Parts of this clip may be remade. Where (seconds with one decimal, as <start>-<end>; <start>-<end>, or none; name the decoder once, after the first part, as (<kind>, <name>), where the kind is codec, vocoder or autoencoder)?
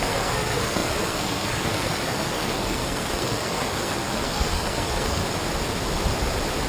0.0-5.2 (codec, SNAC)